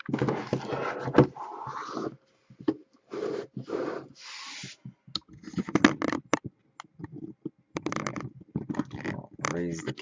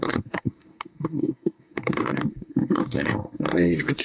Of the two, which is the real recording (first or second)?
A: first